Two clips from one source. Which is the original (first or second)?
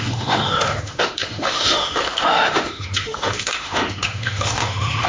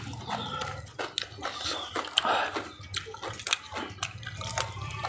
second